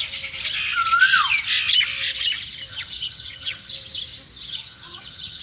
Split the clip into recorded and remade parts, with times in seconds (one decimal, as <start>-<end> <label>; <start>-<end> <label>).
0.0-2.7 recorded; 2.7-3.7 remade; 3.7-4.5 recorded; 4.5-5.4 remade